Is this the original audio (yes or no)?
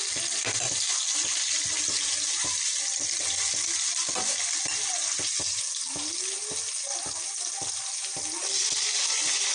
yes